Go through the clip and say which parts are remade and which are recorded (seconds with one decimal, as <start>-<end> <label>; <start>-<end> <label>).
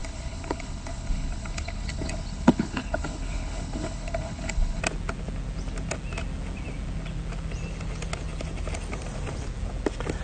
0.0-4.8 remade; 4.8-10.2 recorded